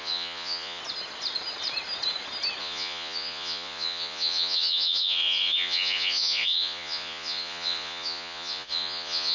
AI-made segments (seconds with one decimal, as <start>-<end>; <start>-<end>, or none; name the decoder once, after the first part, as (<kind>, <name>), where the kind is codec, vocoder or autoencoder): 0.0-0.8 (vocoder, Vocos); 2.6-9.3